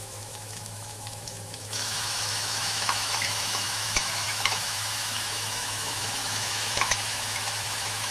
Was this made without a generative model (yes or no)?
no